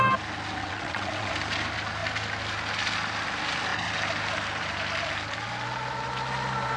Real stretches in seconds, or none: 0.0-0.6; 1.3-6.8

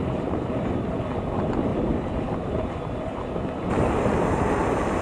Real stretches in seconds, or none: 1.0-1.7

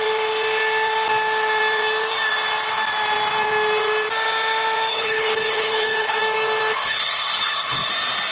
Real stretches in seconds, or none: 0.0-4.9; 6.2-6.7; 7.9-8.3